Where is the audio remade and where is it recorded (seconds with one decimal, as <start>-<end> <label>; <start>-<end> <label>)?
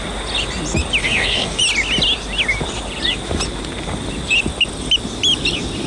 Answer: 0.0-1.0 recorded; 1.0-1.6 remade; 1.6-5.9 recorded